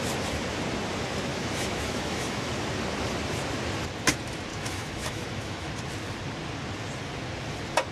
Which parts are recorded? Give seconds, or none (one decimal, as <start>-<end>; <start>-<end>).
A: 0.0-1.3; 2.5-4.5; 5.7-7.9